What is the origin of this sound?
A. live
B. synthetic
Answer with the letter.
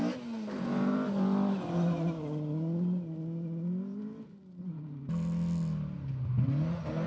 A